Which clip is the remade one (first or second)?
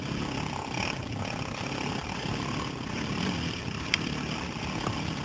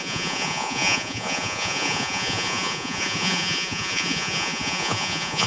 second